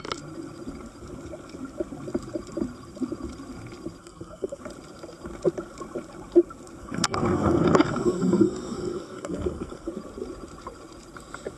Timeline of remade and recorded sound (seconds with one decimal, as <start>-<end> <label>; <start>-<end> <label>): 0.0-4.0 recorded; 4.0-4.6 remade; 4.6-6.8 recorded; 6.8-9.9 remade; 9.9-11.6 recorded